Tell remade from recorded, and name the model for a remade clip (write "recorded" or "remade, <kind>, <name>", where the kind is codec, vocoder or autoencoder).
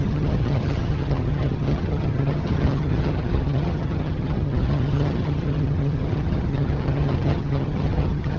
remade, vocoder, HiFi-GAN